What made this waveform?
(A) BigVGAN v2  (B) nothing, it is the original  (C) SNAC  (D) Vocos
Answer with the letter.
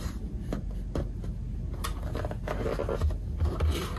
B